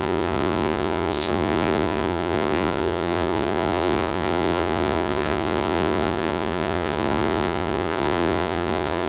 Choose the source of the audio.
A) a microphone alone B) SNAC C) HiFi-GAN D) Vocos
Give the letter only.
D